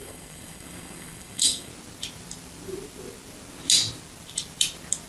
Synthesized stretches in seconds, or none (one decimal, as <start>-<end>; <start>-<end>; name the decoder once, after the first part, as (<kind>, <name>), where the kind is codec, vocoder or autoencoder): 0.0-1.7 (codec, SNAC)